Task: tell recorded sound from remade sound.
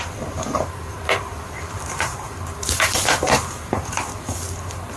remade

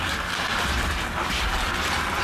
recorded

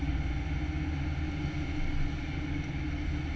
recorded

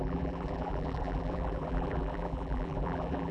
remade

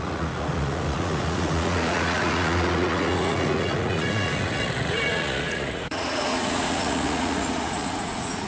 remade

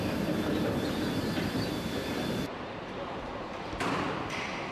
remade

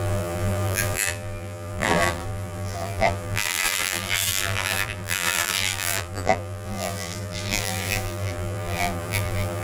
remade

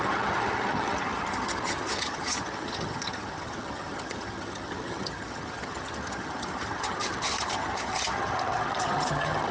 remade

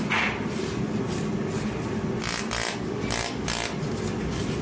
recorded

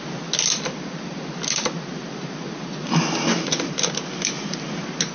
recorded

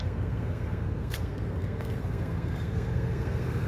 remade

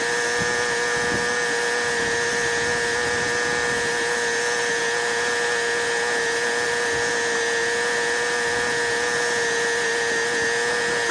recorded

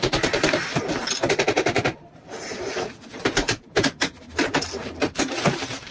remade